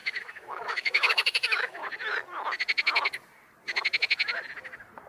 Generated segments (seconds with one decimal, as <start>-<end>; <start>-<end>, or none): 0.0-1.8